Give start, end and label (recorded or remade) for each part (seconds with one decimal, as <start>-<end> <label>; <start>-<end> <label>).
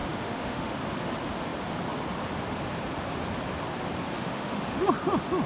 0.0-0.7 remade; 0.7-4.1 recorded; 4.1-4.6 remade; 4.6-5.5 recorded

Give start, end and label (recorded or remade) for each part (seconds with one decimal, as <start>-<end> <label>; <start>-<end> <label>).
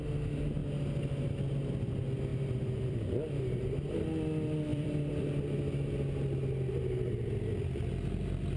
0.0-2.3 recorded; 2.3-3.1 remade; 3.1-4.7 recorded; 4.7-5.3 remade; 5.3-8.6 recorded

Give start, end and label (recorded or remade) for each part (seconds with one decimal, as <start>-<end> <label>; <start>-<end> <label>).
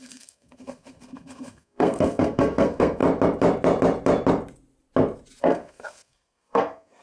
0.0-3.0 remade; 3.0-5.4 recorded; 5.4-7.0 remade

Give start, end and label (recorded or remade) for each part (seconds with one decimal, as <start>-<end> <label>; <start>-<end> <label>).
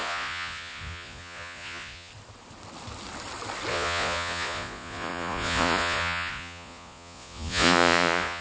0.0-2.1 remade; 2.1-3.7 recorded; 3.7-8.4 remade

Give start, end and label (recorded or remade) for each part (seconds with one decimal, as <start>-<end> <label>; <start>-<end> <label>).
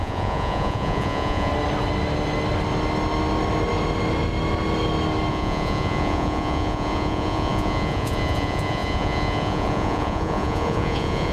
0.0-1.5 remade; 1.5-5.3 recorded; 5.3-11.3 remade